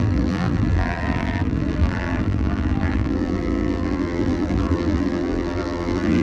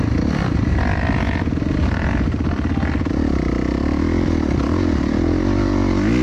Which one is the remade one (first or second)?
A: first